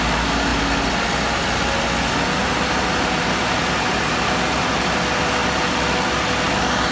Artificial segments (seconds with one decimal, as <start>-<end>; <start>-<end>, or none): none